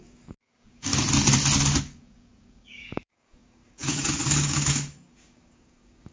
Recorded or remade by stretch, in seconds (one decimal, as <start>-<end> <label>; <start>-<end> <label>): 0.0-0.9 remade; 0.9-1.8 recorded; 1.8-6.1 remade